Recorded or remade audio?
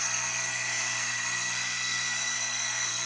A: remade